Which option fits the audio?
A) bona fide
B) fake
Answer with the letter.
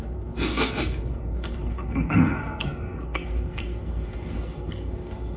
B